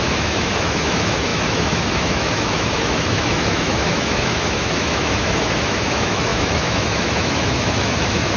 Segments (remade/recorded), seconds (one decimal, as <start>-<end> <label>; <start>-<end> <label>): 0.0-8.4 remade